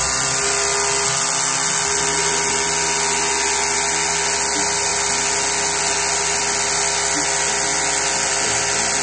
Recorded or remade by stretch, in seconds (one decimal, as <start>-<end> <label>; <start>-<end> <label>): 0.0-9.0 recorded